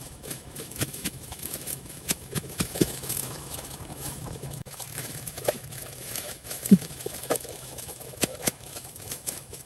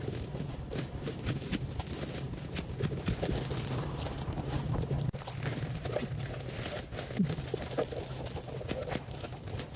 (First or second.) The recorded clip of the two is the second